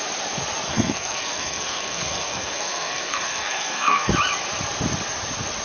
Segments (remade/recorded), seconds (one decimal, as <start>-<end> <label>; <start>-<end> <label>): 0.0-0.7 recorded; 0.7-4.1 remade; 4.1-5.6 recorded